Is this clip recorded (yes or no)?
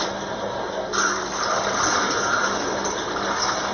yes